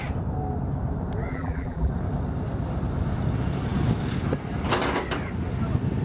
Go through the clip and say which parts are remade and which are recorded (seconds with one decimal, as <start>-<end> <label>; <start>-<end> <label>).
0.0-1.3 recorded; 1.3-1.9 remade; 1.9-6.0 recorded